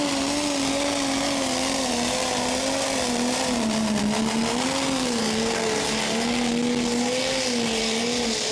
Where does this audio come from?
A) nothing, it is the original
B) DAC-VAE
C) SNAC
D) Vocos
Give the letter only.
A